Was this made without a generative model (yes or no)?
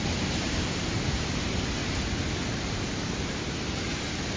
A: yes